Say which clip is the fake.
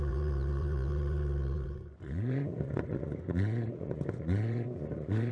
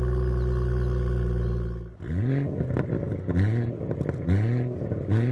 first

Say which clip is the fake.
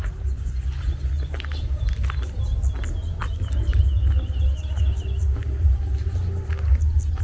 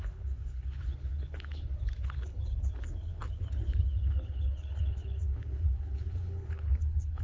second